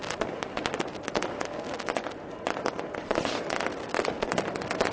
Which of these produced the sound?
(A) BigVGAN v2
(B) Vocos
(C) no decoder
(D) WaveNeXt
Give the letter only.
C